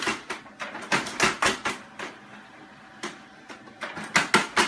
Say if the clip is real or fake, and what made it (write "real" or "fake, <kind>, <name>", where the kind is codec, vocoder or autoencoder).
real